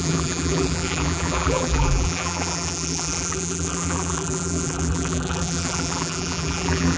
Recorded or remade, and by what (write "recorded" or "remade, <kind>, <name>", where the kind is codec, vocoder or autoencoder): remade, vocoder, BigVGAN v2